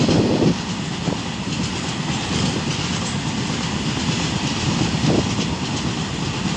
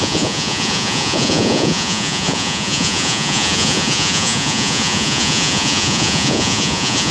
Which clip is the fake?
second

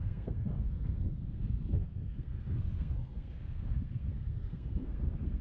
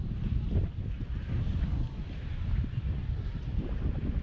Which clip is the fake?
first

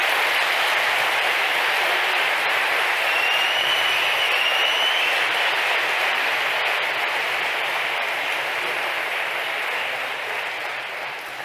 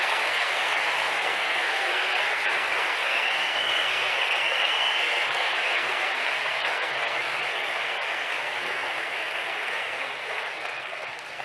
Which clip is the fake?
second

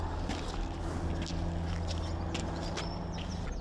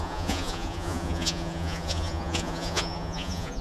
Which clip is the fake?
second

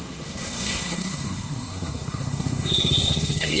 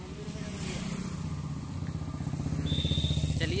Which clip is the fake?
first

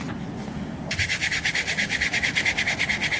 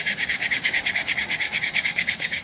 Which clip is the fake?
second